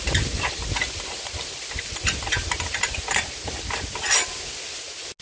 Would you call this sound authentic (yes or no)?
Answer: yes